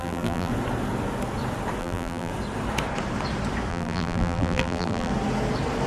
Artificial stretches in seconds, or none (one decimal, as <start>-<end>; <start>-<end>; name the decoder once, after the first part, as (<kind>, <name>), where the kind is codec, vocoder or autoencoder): 0.0-0.5 (vocoder, BigVGAN v2); 1.8-2.3; 3.7-5.1